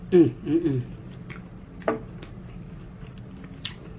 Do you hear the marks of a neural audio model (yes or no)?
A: no